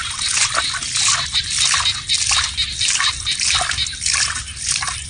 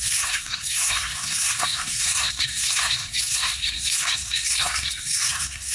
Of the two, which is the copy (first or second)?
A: second